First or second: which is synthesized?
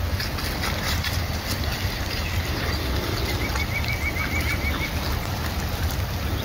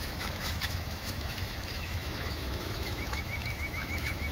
second